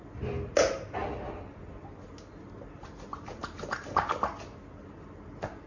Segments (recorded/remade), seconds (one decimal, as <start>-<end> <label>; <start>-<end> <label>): 0.0-5.7 recorded

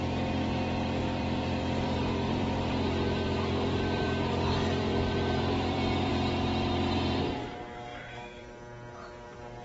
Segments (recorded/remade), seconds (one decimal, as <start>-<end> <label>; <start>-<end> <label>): 0.0-1.0 recorded; 1.0-6.1 remade; 6.1-9.6 recorded

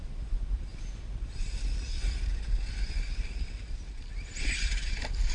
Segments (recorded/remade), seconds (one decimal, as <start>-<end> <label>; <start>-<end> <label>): 0.0-5.3 recorded

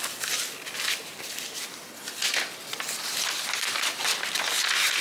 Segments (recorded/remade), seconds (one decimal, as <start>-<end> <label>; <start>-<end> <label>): 0.0-5.0 recorded

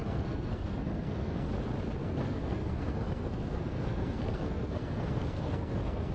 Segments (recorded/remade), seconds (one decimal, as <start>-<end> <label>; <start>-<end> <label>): 0.0-1.5 remade; 1.5-2.0 recorded; 2.0-6.1 remade